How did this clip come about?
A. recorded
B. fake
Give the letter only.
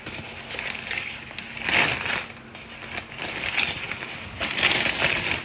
A